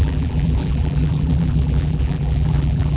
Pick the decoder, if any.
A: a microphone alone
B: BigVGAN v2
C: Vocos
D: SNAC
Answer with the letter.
B